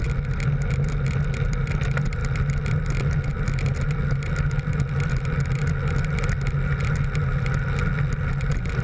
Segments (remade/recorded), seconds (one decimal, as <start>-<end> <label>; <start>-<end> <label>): 0.0-8.8 recorded